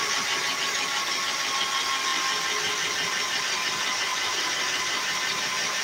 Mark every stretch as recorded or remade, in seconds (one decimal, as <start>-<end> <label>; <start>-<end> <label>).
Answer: 0.0-4.1 recorded; 4.1-5.8 remade